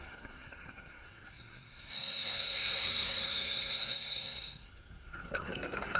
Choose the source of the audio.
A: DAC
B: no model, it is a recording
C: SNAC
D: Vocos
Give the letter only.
C